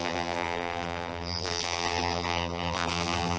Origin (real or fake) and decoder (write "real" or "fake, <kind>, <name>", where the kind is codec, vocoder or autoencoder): fake, vocoder, BigVGAN v2